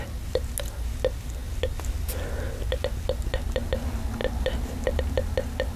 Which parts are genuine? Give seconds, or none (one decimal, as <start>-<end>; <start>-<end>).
0.0-5.8

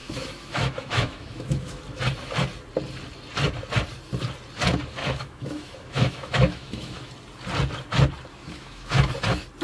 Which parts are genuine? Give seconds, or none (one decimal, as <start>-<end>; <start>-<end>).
1.8-5.0; 7.1-8.3; 9.1-9.6